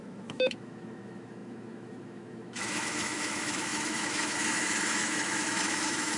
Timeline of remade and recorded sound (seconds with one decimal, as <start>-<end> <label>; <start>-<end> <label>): 0.0-6.2 remade

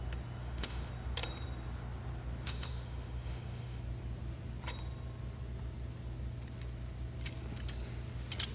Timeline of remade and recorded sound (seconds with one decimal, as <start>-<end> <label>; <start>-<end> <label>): 0.0-0.4 recorded; 0.4-0.9 remade; 0.9-2.4 recorded; 2.4-3.8 remade; 3.8-8.5 recorded

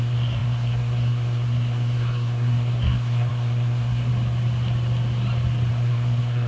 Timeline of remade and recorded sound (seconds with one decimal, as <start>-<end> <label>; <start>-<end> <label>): 0.0-4.1 remade; 4.1-5.7 recorded; 5.7-6.5 remade